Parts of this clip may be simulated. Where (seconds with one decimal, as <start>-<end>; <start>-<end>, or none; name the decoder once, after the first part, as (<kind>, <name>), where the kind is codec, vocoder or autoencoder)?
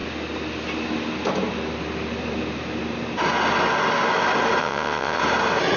4.6-5.2 (vocoder, WaveNeXt)